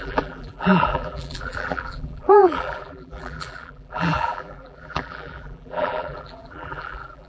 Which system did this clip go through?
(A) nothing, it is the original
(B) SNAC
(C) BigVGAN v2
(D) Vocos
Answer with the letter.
C